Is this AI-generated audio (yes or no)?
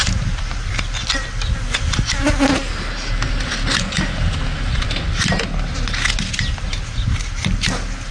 no